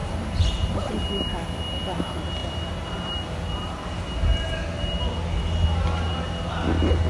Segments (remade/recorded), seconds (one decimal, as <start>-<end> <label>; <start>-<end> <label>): 0.0-0.9 remade; 0.9-7.1 recorded

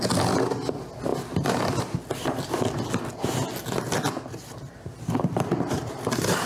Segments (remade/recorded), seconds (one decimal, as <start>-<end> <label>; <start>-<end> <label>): 0.0-5.8 recorded; 5.8-6.5 remade